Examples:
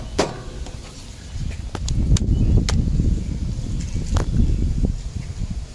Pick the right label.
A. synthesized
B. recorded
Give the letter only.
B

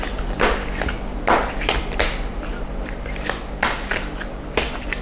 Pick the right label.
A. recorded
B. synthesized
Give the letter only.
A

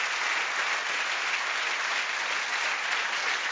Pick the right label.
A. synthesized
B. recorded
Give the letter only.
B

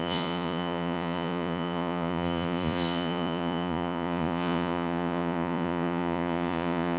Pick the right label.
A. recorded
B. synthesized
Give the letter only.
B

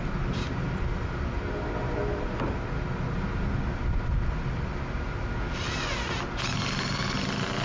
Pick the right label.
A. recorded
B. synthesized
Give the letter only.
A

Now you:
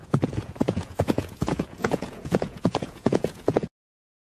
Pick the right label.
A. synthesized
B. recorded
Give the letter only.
A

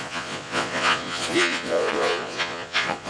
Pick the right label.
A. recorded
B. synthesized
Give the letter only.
B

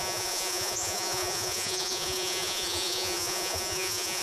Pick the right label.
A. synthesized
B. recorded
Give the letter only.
A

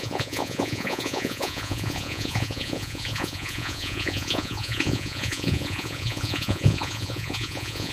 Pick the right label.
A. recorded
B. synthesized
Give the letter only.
B